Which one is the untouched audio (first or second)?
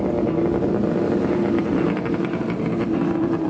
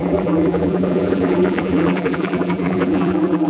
first